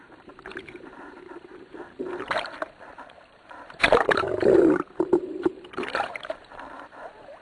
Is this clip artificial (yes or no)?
yes